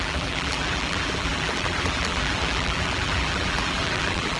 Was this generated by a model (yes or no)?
yes